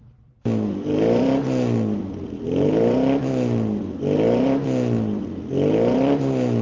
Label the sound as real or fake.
fake